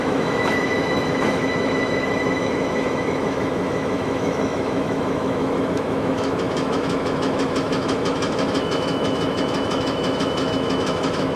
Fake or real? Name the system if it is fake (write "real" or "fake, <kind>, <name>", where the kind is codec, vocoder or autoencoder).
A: fake, autoencoder, DAC-VAE